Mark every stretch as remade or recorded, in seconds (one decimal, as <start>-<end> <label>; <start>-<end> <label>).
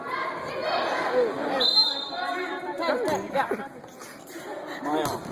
0.0-0.6 recorded; 0.6-2.6 remade; 2.6-5.3 recorded